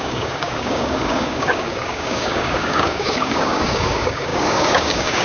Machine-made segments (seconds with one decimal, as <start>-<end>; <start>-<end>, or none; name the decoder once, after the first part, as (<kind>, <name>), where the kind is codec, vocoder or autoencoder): 0.0-5.2 (codec, DAC)